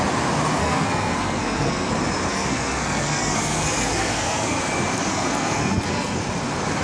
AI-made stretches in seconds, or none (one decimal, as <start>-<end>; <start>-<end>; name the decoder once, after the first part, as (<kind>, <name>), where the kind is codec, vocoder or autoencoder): 0.6-1.9 (codec, SNAC); 2.3-4.6; 5.1-6.2